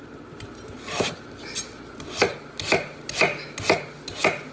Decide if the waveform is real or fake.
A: real